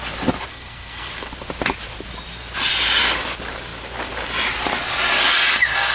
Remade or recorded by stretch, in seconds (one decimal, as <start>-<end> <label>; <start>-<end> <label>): 0.0-0.5 recorded; 0.5-1.1 remade; 1.1-5.9 recorded